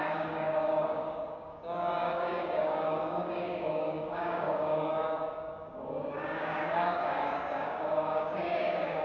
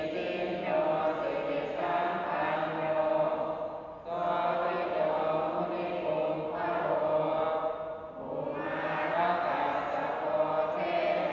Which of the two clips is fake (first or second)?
first